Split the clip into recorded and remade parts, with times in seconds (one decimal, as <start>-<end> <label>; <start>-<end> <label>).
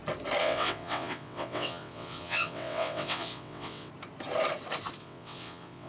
0.0-0.4 recorded; 0.4-3.9 remade; 3.9-5.0 recorded; 5.0-5.9 remade